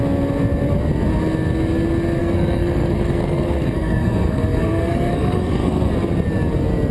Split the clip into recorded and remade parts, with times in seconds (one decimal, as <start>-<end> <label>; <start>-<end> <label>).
0.0-2.2 recorded; 2.2-5.9 remade; 5.9-6.9 recorded